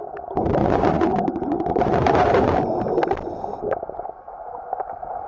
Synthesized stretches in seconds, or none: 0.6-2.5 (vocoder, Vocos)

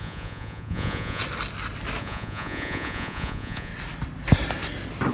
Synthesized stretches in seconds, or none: 0.0-1.2 (vocoder, Vocos); 2.0-3.7

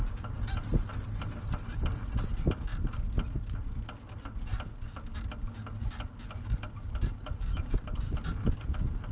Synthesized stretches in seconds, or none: none

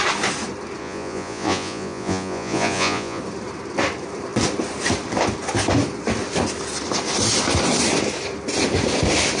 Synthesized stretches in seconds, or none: 0.8-3.2 (vocoder, Vocos)

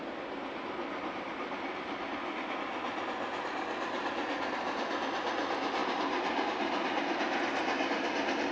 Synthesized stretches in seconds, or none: none